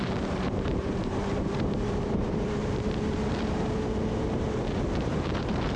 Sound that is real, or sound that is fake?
fake